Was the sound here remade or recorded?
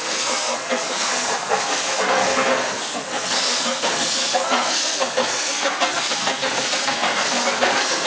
remade